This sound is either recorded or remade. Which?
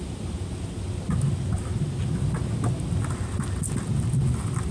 recorded